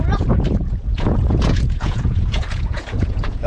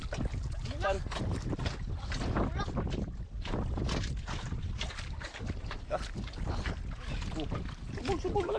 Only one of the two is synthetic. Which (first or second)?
first